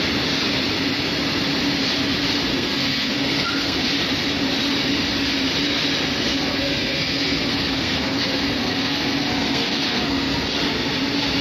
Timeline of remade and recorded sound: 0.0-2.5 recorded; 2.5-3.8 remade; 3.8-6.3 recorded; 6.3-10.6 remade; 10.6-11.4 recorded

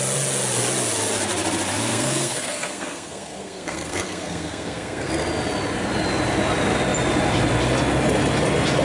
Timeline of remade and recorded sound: 0.0-1.9 recorded; 1.9-5.1 remade; 5.1-8.8 recorded

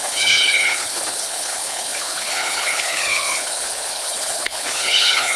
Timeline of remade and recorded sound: 0.0-5.4 remade

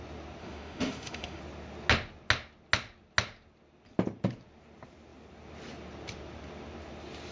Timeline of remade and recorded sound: 0.0-0.4 recorded; 0.4-1.4 remade; 1.4-7.3 recorded

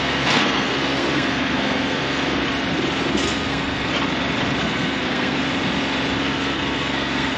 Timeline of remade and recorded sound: 0.0-2.4 remade; 2.4-3.1 recorded; 3.1-3.9 remade; 3.9-4.6 recorded; 4.6-5.4 remade; 5.4-6.2 recorded; 6.2-7.4 remade

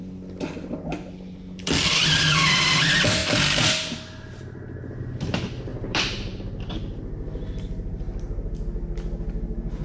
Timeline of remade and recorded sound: 0.0-5.7 recorded; 5.7-6.4 remade; 6.4-9.8 recorded